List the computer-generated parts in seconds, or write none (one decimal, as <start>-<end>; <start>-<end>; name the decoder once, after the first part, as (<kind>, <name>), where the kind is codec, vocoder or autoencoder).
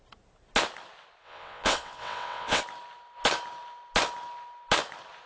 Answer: 1.2-2.6 (vocoder, WaveNeXt)